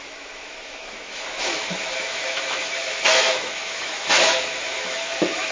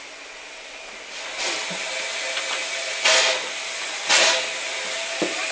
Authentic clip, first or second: second